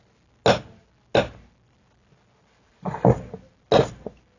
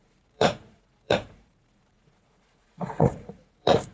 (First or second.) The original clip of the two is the first